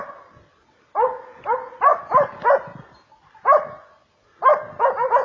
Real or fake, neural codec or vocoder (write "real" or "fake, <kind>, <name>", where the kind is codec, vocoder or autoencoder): real